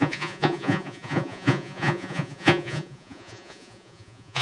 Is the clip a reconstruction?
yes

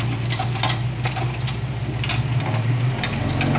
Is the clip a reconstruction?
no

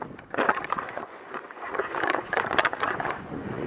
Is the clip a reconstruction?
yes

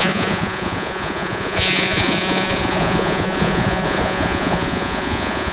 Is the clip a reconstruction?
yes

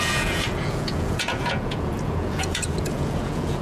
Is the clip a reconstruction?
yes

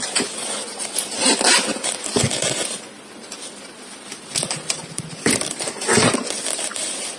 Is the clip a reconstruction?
no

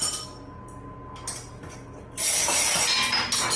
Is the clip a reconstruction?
no